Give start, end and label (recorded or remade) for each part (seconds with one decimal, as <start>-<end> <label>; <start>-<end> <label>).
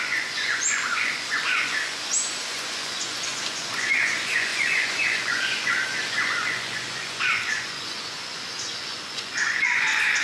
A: 0.0-10.2 remade